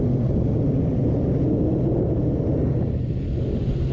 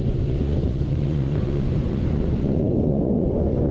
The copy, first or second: second